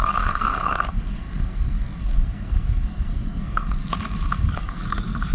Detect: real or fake fake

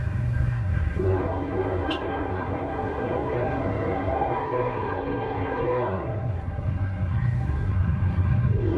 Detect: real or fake fake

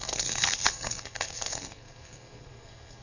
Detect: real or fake fake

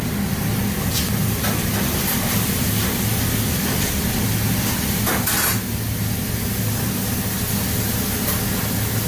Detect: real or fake real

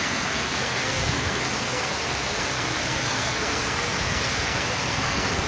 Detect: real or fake fake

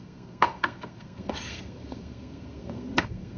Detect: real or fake fake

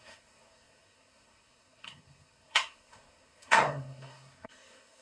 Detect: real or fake fake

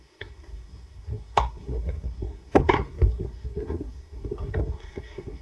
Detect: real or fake fake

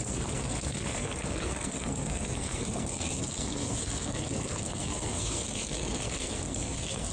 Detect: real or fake fake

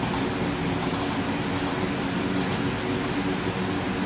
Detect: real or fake real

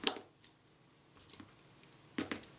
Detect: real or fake real